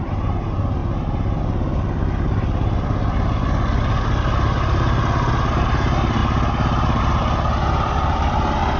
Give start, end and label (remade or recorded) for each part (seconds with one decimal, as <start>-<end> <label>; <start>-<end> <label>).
0.0-0.8 remade; 0.8-4.0 recorded; 4.0-6.2 remade; 6.2-7.0 recorded; 7.0-8.8 remade